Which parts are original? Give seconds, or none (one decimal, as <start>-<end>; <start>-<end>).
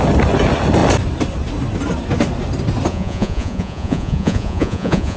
0.0-2.9